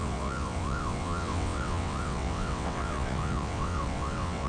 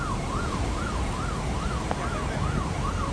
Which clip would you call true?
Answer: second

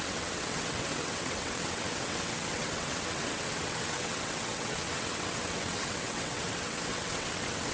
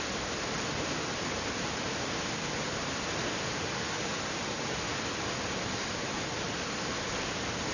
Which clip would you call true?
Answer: second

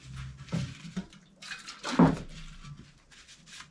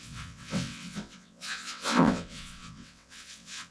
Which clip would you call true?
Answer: first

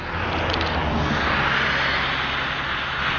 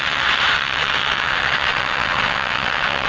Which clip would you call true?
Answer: first